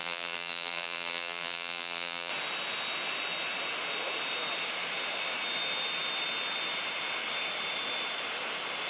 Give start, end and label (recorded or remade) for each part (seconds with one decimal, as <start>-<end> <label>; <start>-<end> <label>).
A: 0.0-2.3 remade; 2.3-8.9 recorded